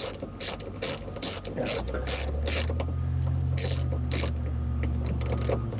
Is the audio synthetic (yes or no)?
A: no